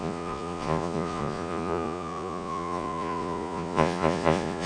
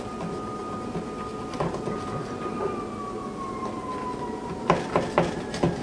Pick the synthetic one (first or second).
first